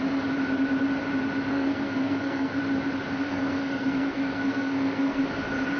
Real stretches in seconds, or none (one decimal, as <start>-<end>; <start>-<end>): 0.0-1.5; 2.6-3.1; 5.2-5.8

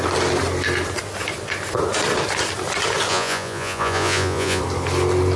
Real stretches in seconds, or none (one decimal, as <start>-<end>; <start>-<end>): 0.0-3.1; 4.6-5.4

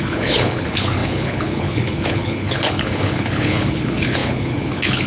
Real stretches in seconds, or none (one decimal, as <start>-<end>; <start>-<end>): none

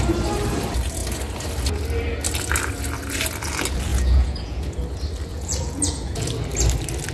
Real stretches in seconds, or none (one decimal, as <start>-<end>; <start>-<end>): 0.0-3.9; 4.8-5.3; 6.3-7.1